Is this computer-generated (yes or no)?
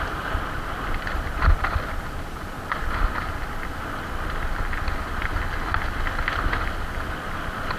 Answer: no